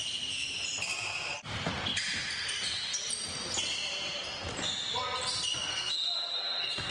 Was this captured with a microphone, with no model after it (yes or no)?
yes